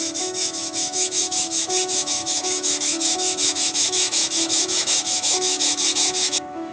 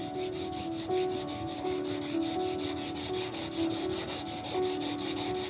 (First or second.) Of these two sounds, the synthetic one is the first